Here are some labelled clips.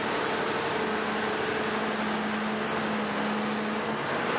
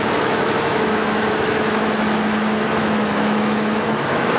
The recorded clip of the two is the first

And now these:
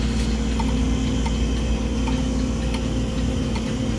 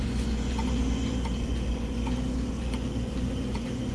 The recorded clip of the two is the first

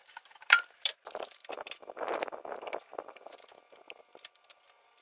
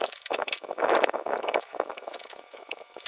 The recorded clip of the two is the first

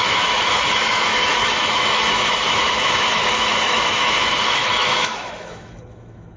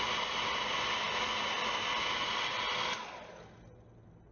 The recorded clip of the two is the second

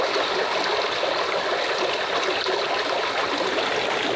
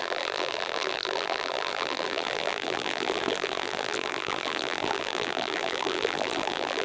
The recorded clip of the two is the first